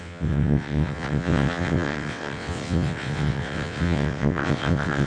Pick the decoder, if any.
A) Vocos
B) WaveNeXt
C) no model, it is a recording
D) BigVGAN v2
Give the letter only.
B